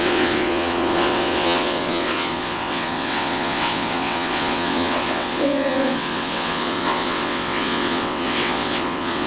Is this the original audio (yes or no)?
no